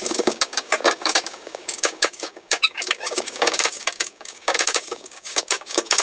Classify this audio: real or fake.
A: fake